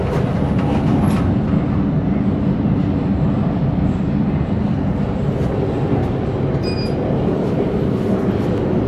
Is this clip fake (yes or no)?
no